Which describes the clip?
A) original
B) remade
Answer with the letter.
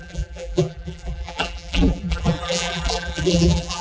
B